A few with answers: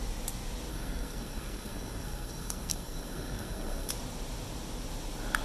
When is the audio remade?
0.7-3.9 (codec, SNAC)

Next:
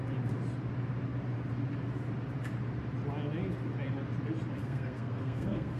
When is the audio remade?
4.6-5.8 (codec, SNAC)

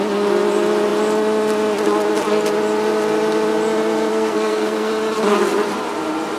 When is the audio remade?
4.1-4.9 (codec, SNAC)